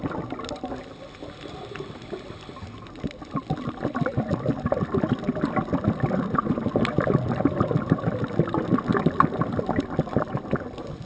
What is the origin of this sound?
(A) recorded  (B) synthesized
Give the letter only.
A